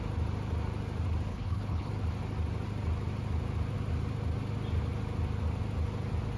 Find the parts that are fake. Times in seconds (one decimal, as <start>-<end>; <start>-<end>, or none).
1.3-1.9

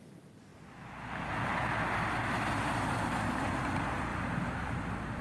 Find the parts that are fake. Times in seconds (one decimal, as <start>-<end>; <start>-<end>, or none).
none

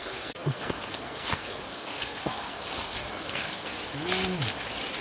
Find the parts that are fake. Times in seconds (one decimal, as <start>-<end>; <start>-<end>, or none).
0.0-3.8

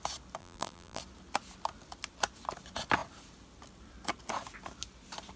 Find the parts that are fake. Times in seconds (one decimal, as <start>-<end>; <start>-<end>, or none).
0.4-1.0

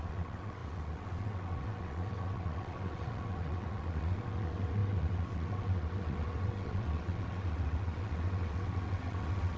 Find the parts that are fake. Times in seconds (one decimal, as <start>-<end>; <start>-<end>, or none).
0.0-9.6